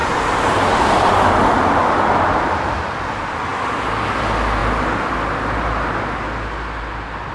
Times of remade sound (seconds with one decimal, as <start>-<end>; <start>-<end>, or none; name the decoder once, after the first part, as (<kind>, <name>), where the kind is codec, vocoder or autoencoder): 0.0-1.1 (vocoder, BigVGAN v2)